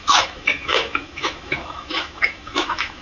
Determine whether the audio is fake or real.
fake